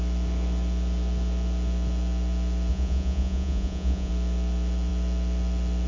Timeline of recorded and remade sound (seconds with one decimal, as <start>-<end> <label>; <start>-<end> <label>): 0.0-2.7 recorded; 2.7-4.1 remade; 4.1-5.9 recorded